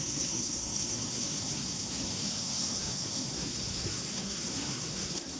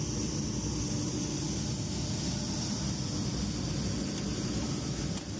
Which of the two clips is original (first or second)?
second